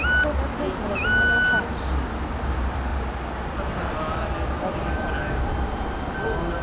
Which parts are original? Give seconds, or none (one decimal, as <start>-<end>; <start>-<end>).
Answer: 0.0-6.6